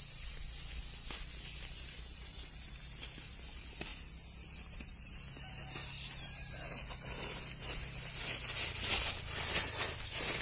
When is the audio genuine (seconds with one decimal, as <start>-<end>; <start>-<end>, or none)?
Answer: 0.0-10.4